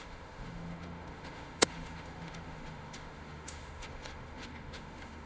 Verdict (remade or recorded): remade